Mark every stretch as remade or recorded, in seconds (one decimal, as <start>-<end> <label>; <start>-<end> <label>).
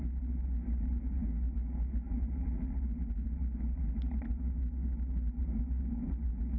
0.0-6.6 recorded